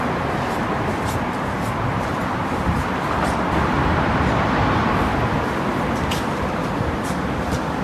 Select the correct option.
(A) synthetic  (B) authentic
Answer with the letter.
A